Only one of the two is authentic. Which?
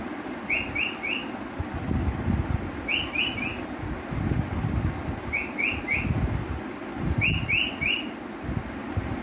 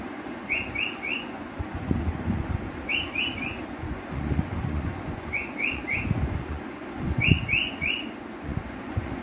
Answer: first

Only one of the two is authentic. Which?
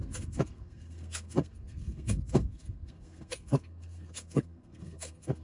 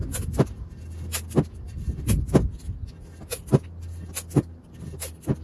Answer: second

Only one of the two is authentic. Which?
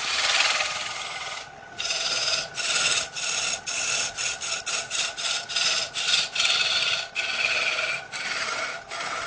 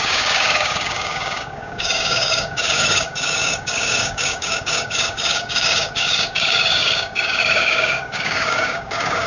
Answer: first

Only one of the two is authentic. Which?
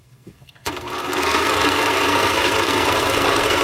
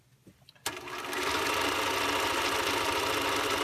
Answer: second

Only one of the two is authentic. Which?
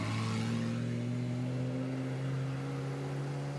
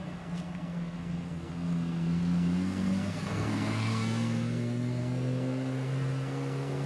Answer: first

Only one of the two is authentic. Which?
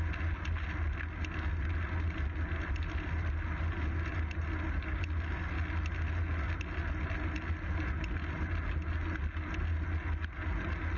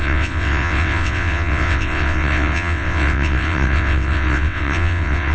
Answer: first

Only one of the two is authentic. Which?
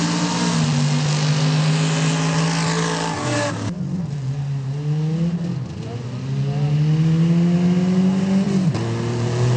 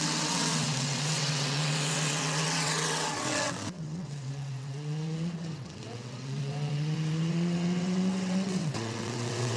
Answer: first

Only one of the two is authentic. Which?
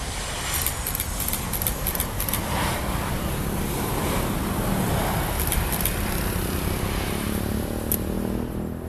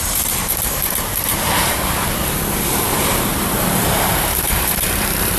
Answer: first